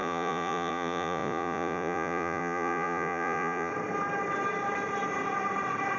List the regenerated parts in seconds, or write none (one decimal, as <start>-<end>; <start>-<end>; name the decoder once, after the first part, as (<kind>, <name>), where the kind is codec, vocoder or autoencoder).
0.0-3.7 (vocoder, Vocos)